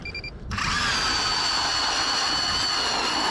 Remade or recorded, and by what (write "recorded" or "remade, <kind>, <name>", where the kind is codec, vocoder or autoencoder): recorded